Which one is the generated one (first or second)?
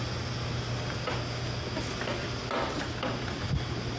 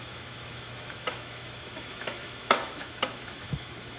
second